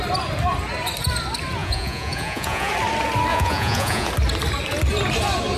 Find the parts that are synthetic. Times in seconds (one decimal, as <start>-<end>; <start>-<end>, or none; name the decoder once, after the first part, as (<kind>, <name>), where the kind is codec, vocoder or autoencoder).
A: 1.6-2.7 (vocoder, Vocos); 3.3-4.1